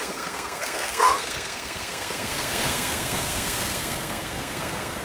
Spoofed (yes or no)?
yes